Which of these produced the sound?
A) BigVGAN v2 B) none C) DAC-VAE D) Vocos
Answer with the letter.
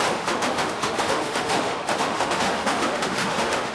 C